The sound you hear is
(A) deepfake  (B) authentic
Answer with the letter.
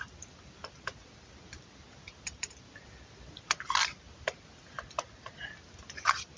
B